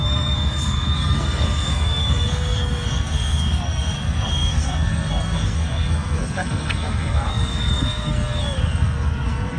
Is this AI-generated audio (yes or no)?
yes